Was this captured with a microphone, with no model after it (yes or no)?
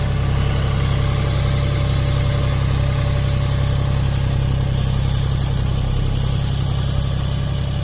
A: yes